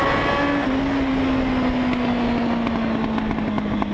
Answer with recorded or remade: recorded